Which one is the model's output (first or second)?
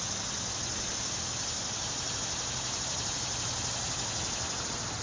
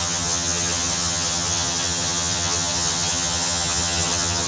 second